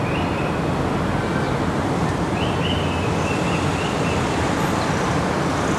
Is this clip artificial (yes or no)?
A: no